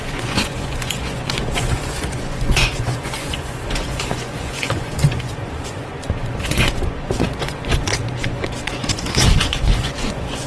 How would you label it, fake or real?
fake